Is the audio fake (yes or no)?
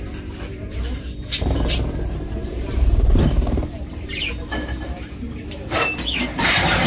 yes